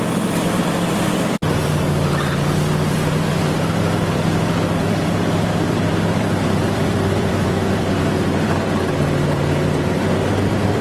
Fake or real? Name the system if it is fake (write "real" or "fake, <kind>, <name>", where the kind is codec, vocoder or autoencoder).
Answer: fake, vocoder, BigVGAN v2